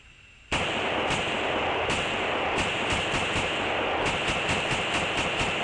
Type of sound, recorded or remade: recorded